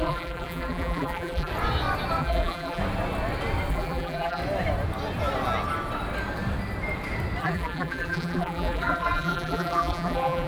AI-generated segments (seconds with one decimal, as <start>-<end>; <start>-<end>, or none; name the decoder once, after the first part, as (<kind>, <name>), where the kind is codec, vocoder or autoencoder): 0.0-1.5 (vocoder, BigVGAN v2); 2.2-2.8; 3.7-4.4; 7.4-10.5

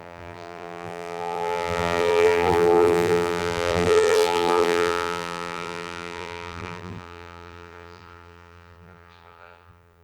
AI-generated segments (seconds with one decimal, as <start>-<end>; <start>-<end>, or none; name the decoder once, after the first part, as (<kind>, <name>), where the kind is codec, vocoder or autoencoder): 0.0-10.0 (vocoder, BigVGAN v2)